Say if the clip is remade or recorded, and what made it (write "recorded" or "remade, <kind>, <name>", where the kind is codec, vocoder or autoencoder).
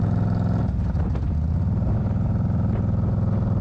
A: recorded